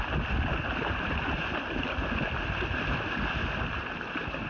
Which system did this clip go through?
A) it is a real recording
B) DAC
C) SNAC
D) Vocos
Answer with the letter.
A